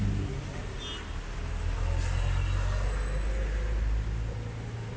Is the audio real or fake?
real